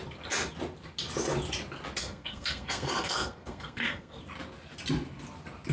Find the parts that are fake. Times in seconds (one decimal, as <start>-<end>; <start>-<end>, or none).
2.0-4.2